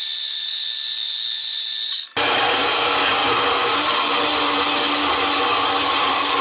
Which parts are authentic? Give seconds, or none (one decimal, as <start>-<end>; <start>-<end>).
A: 0.0-6.4